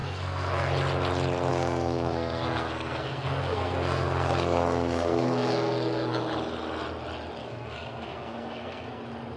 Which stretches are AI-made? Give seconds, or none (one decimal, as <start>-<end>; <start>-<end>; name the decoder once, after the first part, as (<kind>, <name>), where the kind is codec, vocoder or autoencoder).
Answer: 0.0-0.7 (codec, SNAC); 1.5-6.2; 7.4-9.0